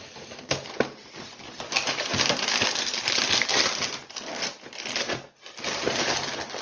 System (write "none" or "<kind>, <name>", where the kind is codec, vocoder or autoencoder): none